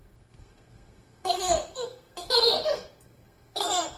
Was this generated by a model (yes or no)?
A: yes